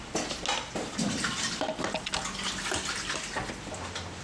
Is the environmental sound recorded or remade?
recorded